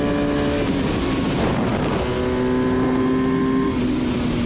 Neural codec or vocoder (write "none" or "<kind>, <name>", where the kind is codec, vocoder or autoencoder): none